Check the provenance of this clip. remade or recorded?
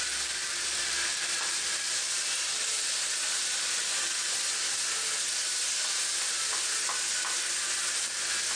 recorded